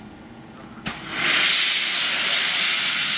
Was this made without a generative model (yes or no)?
yes